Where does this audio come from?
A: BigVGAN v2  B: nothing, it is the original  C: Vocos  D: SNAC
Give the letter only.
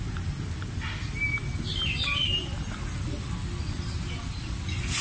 B